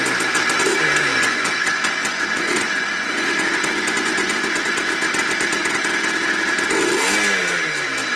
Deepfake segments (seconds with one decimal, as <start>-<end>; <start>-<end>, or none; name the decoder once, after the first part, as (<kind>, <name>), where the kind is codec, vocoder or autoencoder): 1.1-4.8 (vocoder, Vocos)